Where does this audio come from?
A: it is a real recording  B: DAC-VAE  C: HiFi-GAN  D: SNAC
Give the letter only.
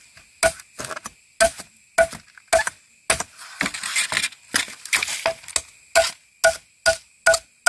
A